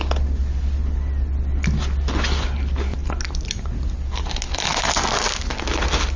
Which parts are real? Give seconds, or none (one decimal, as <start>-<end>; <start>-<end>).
0.0-6.2